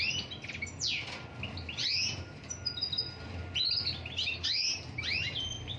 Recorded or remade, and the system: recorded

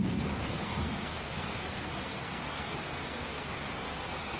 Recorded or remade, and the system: remade, codec, SNAC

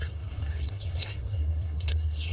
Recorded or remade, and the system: remade, codec, SNAC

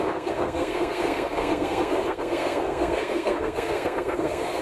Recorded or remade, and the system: remade, codec, SNAC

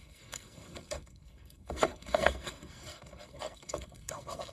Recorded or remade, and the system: remade, codec, SNAC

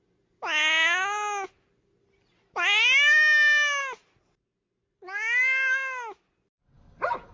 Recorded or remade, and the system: recorded